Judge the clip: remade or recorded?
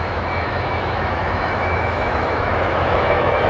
remade